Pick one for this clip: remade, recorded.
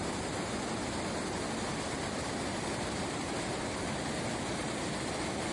recorded